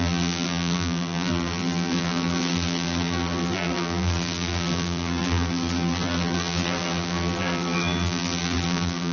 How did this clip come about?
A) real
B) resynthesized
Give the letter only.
B